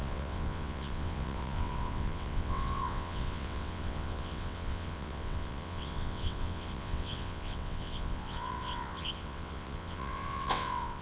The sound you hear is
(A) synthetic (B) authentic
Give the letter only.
A